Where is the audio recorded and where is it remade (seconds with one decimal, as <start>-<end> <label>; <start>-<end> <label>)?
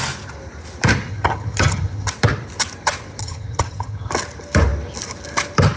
0.0-1.1 recorded; 1.1-2.1 remade; 2.1-3.2 recorded; 3.2-4.1 remade; 4.1-5.8 recorded